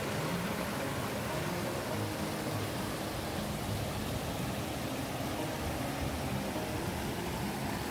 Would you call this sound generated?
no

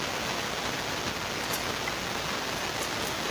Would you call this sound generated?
no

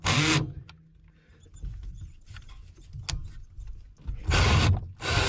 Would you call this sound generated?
no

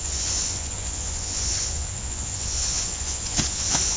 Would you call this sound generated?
yes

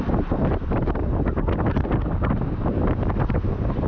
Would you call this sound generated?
no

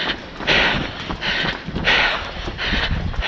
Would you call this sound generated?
no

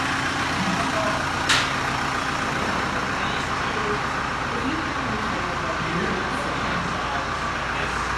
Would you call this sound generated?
no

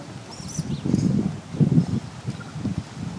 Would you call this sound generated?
no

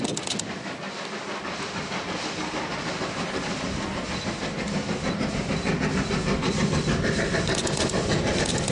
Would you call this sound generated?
no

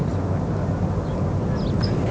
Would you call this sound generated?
no